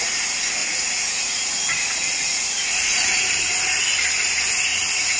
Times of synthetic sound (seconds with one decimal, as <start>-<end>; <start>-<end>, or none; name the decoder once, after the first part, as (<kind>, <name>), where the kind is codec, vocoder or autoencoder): 0.6-3.5 (vocoder, Vocos); 4.7-5.2

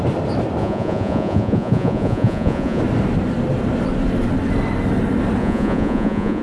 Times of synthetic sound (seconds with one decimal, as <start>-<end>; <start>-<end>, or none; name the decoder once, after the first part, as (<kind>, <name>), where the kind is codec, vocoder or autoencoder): 0.6-2.8 (vocoder, Vocos); 5.4-6.4

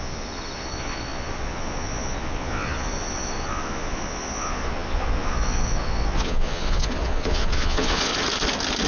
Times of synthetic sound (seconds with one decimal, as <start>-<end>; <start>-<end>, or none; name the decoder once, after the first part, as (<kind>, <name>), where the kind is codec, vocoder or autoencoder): 0.0-8.1 (vocoder, Vocos)

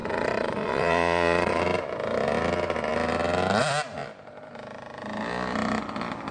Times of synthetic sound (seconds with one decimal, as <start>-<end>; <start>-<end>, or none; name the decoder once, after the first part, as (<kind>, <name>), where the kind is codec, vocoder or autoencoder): 0.0-1.6 (vocoder, Vocos)